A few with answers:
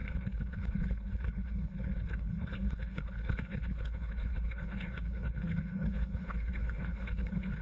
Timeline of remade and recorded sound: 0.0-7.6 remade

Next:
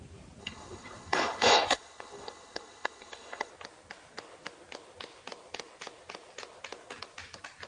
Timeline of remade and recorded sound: 0.0-0.4 recorded; 0.4-3.5 remade; 3.5-7.7 recorded

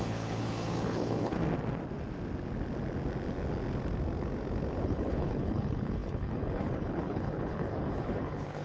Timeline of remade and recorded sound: 0.0-1.4 remade; 1.4-4.8 recorded; 4.8-8.6 remade

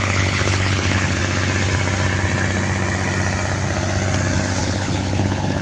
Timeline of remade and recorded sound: 0.0-1.2 remade; 1.2-4.6 recorded; 4.6-5.6 remade

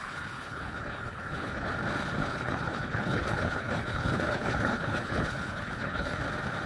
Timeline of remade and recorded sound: 0.0-1.7 remade; 1.7-2.2 recorded; 2.2-6.2 remade; 6.2-6.7 recorded